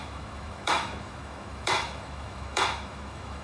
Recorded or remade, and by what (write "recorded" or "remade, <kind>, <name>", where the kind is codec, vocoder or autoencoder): remade, autoencoder, DAC-VAE